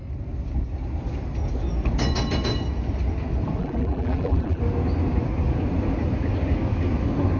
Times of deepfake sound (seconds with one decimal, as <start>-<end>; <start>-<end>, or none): 3.6-4.6